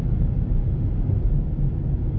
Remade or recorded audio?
recorded